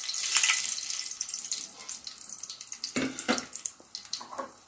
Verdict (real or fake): real